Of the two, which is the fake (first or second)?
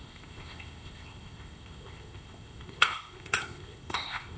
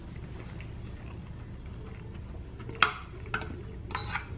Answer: first